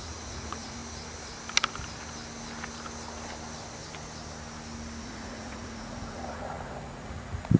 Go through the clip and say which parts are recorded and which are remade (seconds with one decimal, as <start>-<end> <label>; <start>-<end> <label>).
0.0-0.8 remade; 0.8-5.0 recorded; 5.0-7.6 remade